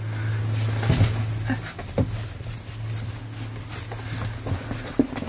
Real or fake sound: real